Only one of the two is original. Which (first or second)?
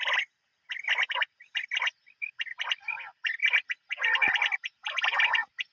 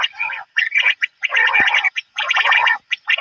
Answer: first